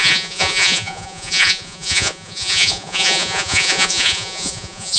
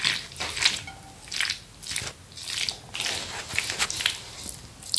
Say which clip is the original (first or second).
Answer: second